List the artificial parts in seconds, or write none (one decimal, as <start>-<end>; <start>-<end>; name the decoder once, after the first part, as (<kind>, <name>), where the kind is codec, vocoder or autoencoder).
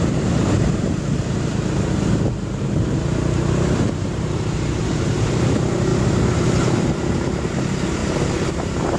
0.0-9.0 (vocoder, BigVGAN v2)